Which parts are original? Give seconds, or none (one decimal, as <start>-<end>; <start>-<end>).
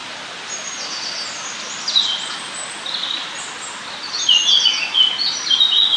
0.0-6.0